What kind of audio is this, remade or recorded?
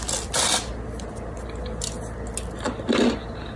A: recorded